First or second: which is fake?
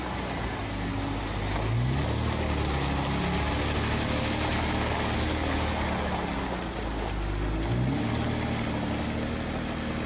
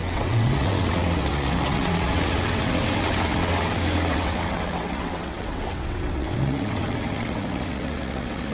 second